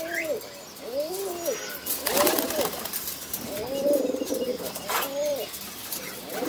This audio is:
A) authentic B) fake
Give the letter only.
A